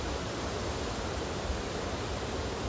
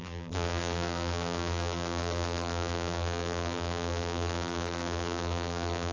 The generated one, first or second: second